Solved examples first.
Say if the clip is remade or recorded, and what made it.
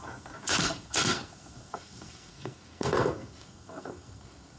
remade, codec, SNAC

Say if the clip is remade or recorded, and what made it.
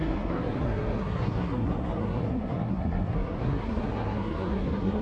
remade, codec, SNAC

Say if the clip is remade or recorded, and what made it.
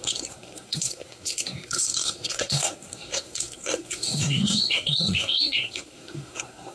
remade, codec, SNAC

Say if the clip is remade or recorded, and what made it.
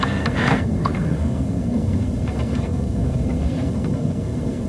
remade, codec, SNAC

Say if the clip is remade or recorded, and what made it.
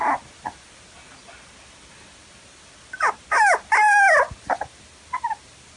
recorded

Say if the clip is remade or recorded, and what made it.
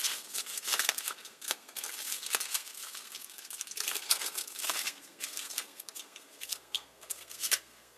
remade, codec, SNAC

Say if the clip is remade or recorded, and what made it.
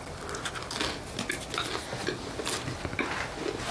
recorded